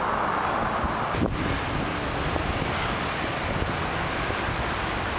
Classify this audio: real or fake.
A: real